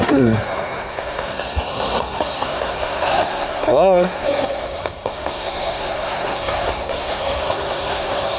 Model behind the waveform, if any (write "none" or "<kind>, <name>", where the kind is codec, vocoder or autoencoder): codec, SNAC